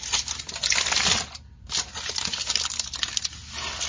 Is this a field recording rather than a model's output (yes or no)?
yes